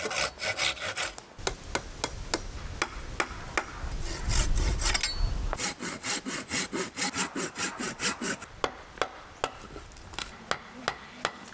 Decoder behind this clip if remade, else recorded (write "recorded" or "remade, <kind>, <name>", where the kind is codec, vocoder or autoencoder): recorded